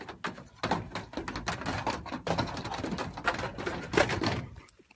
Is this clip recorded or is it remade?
recorded